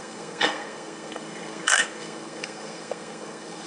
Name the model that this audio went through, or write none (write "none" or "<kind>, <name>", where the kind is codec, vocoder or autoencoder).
codec, SNAC